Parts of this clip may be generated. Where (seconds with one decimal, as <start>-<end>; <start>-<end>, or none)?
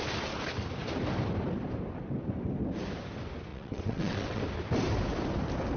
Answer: 3.5-4.4